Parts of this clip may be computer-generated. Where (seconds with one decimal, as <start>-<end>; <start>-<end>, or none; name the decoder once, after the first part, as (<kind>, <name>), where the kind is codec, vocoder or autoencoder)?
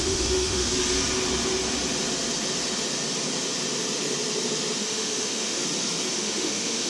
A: 0.0-0.7 (autoencoder, DAC-VAE); 4.8-5.6; 6.1-6.9